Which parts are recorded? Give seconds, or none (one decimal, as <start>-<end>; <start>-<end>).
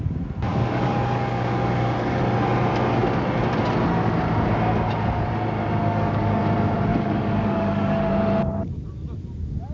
0.0-0.5; 2.2-5.8; 6.4-6.9; 8.1-9.7